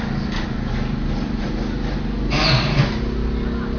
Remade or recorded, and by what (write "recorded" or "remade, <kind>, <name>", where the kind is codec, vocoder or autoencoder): recorded